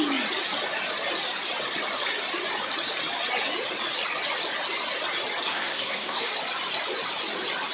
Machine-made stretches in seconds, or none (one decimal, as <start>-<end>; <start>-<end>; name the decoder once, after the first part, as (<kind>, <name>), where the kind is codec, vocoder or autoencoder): 5.5-6.3 (codec, SNAC)